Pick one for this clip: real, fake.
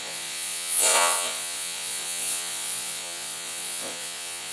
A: fake